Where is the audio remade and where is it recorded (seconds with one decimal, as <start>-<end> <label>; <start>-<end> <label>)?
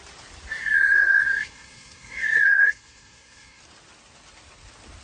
0.0-0.6 recorded; 0.6-3.6 remade; 3.6-5.0 recorded